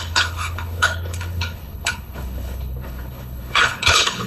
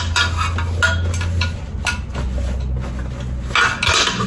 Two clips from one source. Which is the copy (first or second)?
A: first